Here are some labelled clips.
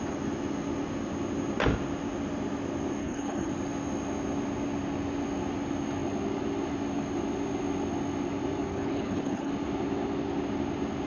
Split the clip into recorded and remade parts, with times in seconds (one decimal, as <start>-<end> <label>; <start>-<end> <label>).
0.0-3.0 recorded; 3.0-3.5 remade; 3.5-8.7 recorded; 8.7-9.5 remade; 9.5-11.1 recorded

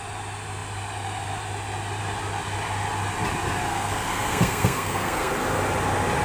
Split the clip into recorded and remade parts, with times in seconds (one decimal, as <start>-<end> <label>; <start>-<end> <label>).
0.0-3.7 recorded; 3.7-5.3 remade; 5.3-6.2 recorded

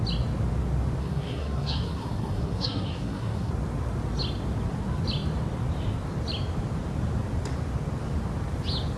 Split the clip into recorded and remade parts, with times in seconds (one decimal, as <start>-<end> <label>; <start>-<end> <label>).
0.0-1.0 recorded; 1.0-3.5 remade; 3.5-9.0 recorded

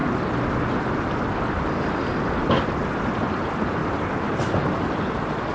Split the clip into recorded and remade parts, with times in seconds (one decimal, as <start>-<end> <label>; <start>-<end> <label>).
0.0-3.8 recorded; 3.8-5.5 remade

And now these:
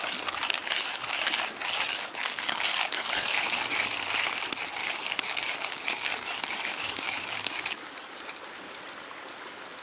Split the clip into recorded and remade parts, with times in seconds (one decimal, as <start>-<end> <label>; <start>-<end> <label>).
0.0-1.9 recorded; 1.9-3.9 remade; 3.9-4.8 recorded; 4.8-8.2 remade; 8.2-9.8 recorded

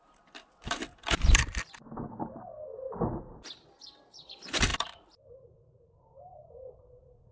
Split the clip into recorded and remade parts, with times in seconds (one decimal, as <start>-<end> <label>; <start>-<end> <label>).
0.0-2.7 remade; 2.7-3.2 recorded; 3.2-7.3 remade

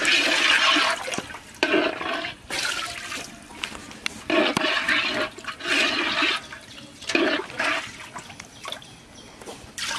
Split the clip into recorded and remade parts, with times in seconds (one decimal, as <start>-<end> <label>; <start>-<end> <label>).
0.0-3.5 recorded; 3.5-4.2 remade; 4.2-10.0 recorded